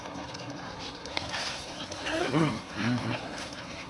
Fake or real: fake